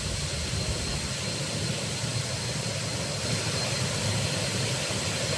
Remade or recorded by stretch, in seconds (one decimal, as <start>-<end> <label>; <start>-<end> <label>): 0.0-5.4 recorded